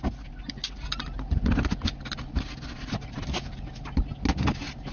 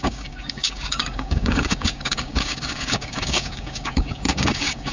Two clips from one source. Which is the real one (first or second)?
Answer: first